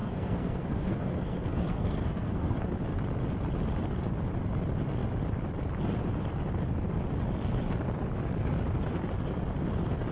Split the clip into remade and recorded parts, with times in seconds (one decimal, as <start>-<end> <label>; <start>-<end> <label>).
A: 0.0-2.6 remade; 2.6-10.1 recorded